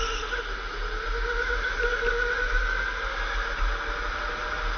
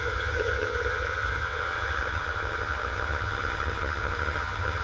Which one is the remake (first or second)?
second